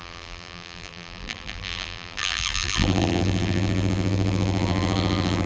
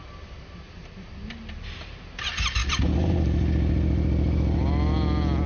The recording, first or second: second